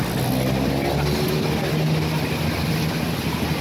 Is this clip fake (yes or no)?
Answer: no